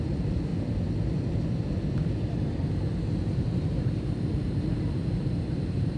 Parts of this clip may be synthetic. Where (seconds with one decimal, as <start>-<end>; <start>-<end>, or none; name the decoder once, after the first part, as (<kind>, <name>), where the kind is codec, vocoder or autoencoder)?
0.0-0.5 (vocoder, BigVGAN v2); 3.3-6.0